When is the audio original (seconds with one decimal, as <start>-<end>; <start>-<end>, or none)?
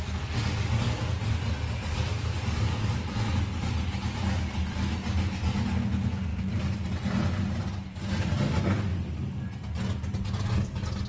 0.0-6.3; 6.9-8.9; 10.7-11.1